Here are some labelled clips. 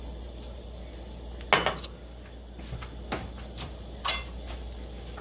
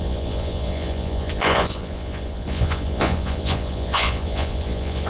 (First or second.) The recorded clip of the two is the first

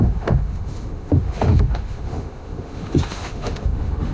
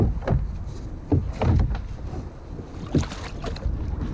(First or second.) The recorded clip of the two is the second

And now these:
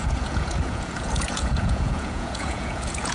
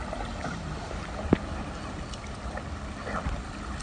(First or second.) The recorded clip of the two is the second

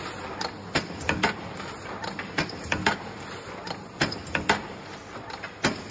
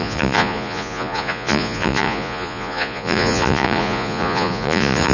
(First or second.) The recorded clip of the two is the first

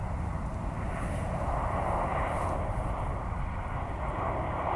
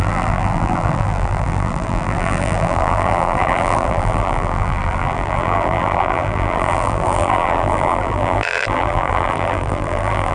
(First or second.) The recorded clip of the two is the first